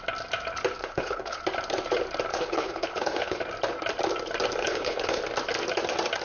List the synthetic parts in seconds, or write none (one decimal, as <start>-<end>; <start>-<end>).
0.8-1.4; 2.3-3.4; 4.6-5.2